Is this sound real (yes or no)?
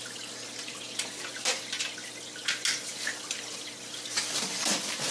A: yes